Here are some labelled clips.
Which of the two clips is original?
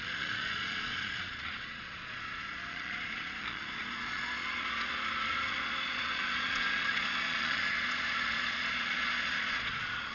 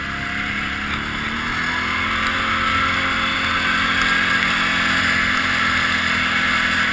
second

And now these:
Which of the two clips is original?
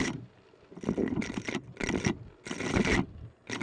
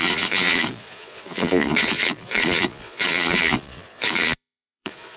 first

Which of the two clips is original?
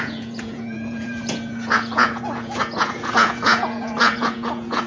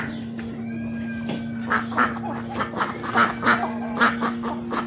second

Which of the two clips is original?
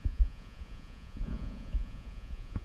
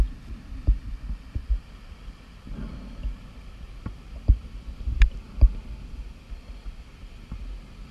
second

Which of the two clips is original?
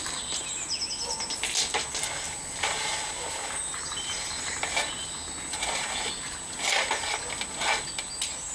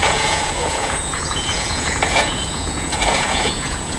first